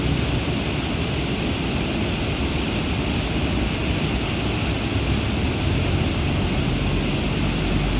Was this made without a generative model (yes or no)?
yes